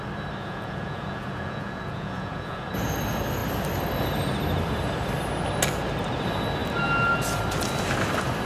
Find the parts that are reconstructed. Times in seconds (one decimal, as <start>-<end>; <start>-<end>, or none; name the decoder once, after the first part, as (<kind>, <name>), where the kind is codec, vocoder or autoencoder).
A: 0.4-2.7 (vocoder, Vocos)